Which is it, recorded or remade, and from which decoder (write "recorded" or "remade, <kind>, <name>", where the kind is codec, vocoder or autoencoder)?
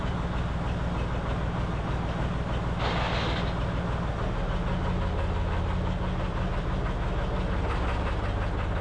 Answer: recorded